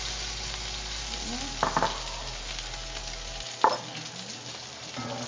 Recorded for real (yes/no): yes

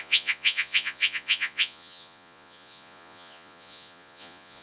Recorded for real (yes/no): no